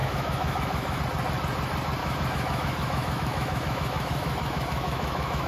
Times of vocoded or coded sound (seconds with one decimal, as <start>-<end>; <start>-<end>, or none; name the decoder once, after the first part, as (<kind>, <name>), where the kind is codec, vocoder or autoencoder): 0.0-1.0 (autoencoder, DAC-VAE); 2.0-5.5

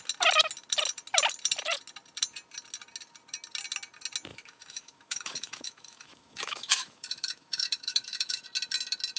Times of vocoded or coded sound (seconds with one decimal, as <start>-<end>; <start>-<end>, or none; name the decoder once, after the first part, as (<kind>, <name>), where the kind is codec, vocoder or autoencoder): 4.3-8.4 (autoencoder, DAC-VAE)

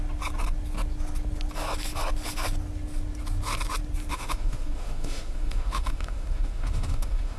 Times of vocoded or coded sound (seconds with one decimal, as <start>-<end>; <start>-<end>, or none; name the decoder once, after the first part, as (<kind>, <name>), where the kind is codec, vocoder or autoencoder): 4.1-7.4 (autoencoder, DAC-VAE)

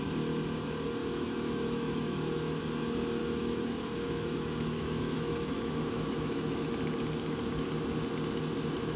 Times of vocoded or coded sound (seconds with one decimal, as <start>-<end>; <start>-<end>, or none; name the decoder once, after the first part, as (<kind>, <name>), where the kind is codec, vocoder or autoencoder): 1.0-2.6 (autoencoder, DAC-VAE); 3.2-6.7

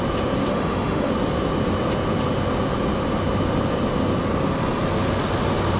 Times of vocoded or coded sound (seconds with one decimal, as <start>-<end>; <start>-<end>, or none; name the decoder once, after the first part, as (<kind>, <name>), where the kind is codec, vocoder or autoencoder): 0.5-1.1 (autoencoder, DAC-VAE)